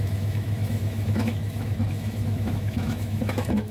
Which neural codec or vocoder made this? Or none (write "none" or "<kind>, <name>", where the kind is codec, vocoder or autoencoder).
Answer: autoencoder, DAC-VAE